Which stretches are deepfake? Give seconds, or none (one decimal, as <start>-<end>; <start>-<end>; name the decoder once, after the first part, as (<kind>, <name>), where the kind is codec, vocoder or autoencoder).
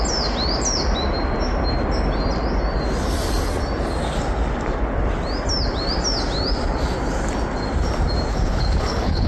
8.3-9.3 (codec, HILCodec)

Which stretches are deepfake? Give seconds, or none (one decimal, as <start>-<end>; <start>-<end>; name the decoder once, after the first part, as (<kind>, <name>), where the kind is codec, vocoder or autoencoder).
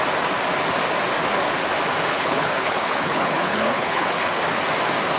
2.1-4.3 (codec, HILCodec)